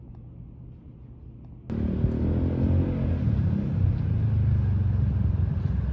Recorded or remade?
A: recorded